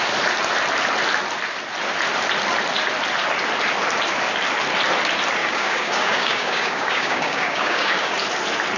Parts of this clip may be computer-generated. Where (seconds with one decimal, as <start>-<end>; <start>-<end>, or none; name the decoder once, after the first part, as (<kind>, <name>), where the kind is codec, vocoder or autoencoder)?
5.4-8.1 (codec, DAC)